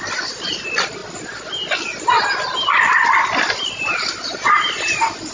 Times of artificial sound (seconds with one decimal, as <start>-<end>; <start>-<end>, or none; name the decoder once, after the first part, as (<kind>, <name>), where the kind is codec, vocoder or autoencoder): none